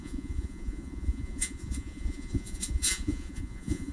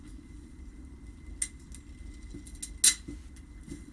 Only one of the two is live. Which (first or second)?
second